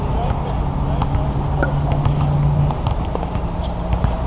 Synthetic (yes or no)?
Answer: no